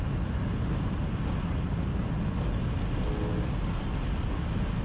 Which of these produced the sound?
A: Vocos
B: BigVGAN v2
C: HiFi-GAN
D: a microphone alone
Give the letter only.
D